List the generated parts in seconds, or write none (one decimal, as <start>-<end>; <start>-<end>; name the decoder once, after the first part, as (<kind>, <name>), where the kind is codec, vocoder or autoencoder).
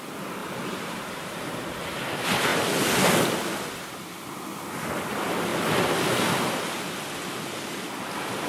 0.4-1.4 (vocoder, BigVGAN v2)